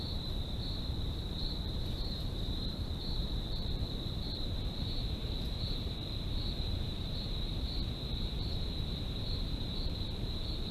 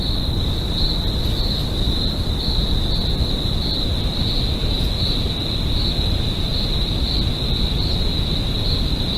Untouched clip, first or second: second